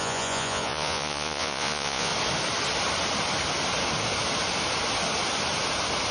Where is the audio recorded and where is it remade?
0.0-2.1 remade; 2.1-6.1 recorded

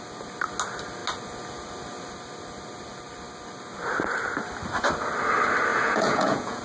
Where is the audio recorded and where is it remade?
0.0-5.7 recorded; 5.7-6.6 remade